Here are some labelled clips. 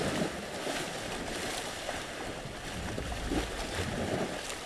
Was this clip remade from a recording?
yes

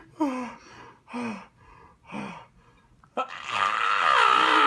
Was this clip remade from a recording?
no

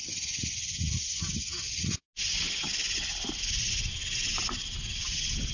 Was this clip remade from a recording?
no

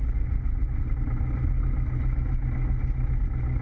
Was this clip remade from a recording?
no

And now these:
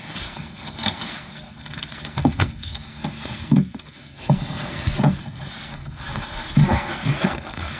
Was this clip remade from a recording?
yes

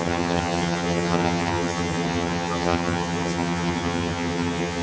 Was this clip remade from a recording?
yes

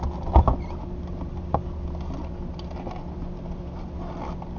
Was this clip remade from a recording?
no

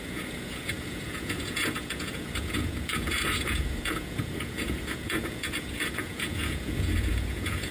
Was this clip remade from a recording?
yes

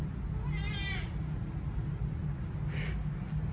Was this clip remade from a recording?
no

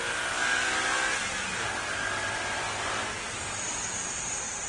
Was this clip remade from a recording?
no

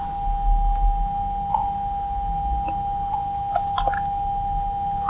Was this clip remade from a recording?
no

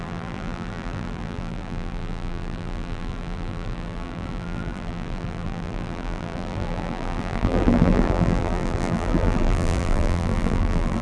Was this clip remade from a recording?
yes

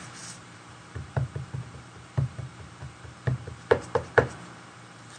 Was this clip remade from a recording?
yes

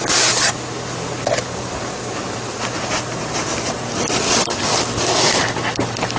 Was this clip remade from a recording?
no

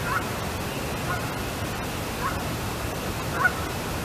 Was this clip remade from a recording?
no